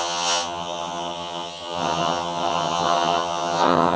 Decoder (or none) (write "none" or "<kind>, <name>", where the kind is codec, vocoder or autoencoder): vocoder, HiFi-GAN